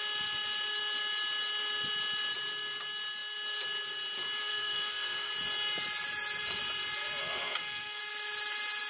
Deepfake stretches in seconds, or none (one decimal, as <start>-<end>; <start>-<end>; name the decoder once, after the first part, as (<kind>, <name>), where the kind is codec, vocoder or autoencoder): 4.4-5.3 (codec, SNAC); 7.2-8.0